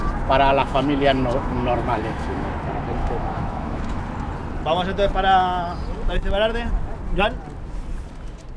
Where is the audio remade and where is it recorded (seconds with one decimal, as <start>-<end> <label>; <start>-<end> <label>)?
0.0-0.5 recorded; 0.5-2.5 remade; 2.5-3.0 recorded; 3.0-4.0 remade; 4.0-8.6 recorded